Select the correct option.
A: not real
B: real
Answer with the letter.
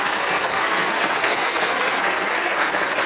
A